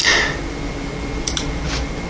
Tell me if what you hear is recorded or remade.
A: recorded